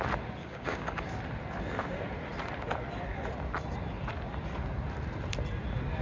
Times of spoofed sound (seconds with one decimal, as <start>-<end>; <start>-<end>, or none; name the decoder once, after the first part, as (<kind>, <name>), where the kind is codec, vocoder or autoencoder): 0.4-1.1 (codec, DAC)